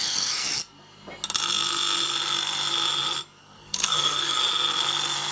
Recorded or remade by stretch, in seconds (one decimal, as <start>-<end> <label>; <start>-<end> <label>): 0.0-0.6 remade; 0.6-3.4 recorded; 3.4-4.4 remade; 4.4-5.3 recorded